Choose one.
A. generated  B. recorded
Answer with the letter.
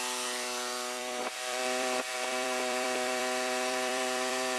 A